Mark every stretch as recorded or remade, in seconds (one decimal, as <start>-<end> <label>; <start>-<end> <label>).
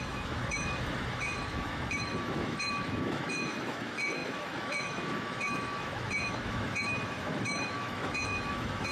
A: 0.0-8.9 remade